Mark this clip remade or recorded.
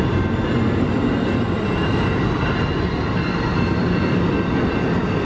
recorded